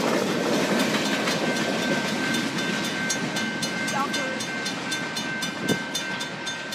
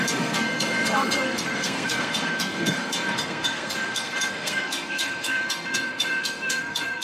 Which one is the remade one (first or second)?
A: second